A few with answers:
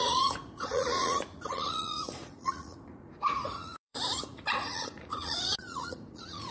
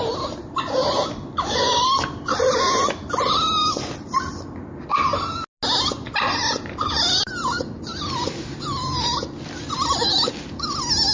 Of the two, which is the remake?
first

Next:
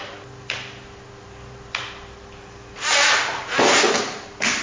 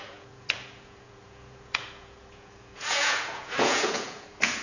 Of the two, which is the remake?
second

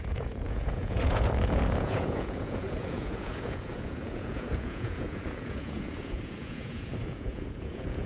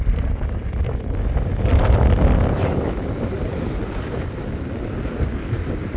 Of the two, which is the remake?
first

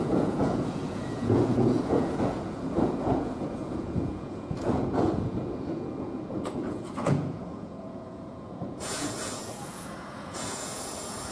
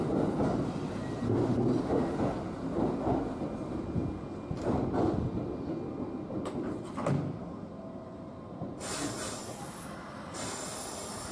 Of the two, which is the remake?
first